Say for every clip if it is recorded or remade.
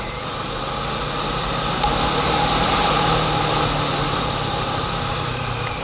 recorded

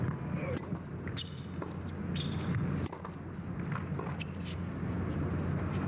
recorded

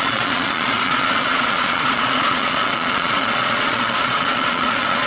remade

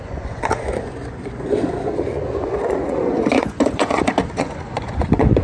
remade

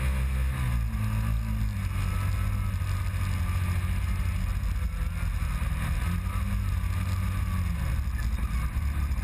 recorded